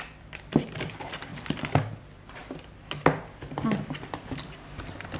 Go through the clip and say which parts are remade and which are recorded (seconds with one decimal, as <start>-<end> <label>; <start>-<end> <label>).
0.0-2.4 remade; 2.4-4.3 recorded; 4.3-5.2 remade